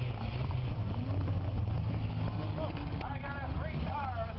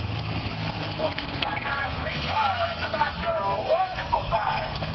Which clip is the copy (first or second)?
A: second